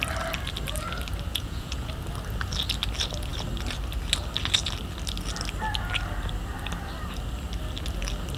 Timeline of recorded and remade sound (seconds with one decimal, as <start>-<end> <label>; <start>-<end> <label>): 0.0-1.3 recorded; 1.3-1.9 remade; 1.9-8.4 recorded